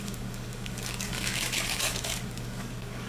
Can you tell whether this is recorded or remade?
remade